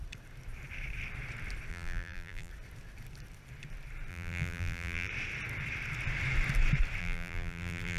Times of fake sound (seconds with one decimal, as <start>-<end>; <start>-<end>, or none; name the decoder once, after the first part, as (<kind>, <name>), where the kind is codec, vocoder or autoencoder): 1.7-2.5 (vocoder, BigVGAN v2); 4.1-5.1; 7.0-8.0